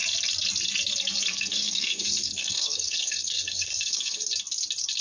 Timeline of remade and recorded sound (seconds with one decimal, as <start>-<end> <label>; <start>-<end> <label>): 0.0-1.3 recorded; 1.3-4.3 remade; 4.3-5.0 recorded